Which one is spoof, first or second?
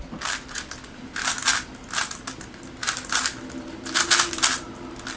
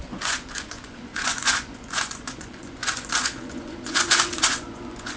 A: second